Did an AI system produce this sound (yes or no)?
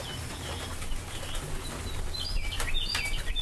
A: no